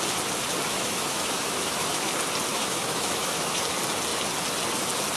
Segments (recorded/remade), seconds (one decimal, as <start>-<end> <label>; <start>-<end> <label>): 0.0-0.7 recorded; 0.7-2.1 remade; 2.1-2.5 recorded; 2.5-3.6 remade; 3.6-5.2 recorded